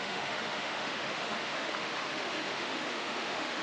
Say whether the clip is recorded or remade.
remade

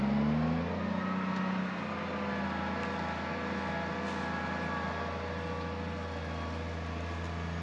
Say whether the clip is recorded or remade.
recorded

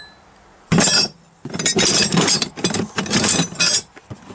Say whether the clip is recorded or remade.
recorded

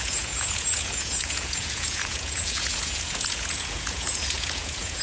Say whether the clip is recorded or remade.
remade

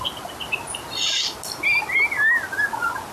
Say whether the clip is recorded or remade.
recorded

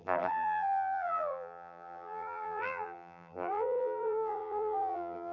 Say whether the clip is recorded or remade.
remade